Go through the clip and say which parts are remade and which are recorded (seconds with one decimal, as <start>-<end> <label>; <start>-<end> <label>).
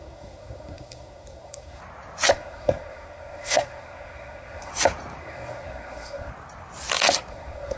0.0-1.8 remade; 1.8-2.3 recorded; 2.3-4.7 remade; 4.7-5.2 recorded; 5.2-6.3 remade; 6.3-7.3 recorded; 7.3-7.8 remade